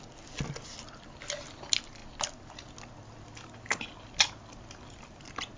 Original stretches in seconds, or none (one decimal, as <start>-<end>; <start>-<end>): 0.0-5.6